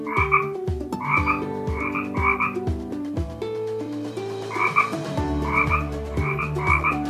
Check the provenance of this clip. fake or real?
fake